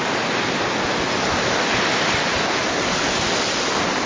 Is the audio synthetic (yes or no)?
no